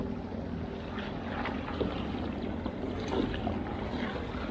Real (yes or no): yes